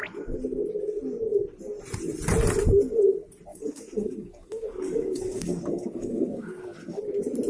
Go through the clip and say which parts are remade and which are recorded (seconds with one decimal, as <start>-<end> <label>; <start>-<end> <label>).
0.0-3.5 recorded; 3.5-7.0 remade; 7.0-7.5 recorded

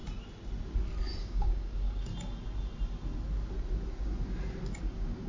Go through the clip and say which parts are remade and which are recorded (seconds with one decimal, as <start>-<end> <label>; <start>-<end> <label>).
0.0-1.2 recorded; 1.2-2.1 remade; 2.1-4.8 recorded; 4.8-5.3 remade

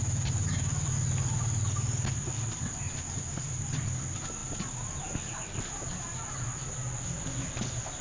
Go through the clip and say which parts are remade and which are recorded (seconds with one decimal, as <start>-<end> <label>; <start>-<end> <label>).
0.0-8.0 recorded

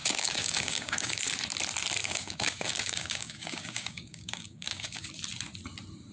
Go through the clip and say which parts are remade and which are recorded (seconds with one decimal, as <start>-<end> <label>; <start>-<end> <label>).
0.0-1.2 remade; 1.2-2.0 recorded; 2.0-5.1 remade; 5.1-6.1 recorded